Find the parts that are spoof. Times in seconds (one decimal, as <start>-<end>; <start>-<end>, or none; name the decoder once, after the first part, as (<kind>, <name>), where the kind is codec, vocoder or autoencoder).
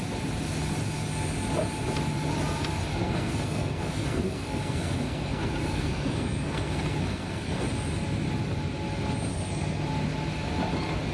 2.9-7.6 (codec, SNAC); 9.3-9.8